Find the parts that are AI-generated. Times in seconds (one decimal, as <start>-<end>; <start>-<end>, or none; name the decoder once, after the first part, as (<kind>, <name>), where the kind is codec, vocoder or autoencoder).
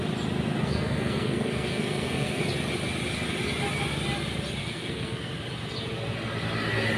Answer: 0.6-2.4 (codec, SNAC); 4.6-5.3